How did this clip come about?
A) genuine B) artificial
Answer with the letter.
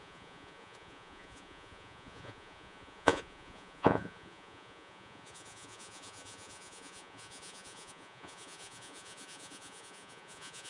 B